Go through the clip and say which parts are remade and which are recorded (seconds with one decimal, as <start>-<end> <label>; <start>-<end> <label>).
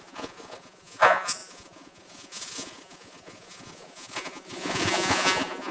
0.0-5.7 remade